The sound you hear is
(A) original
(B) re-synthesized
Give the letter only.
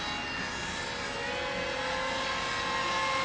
A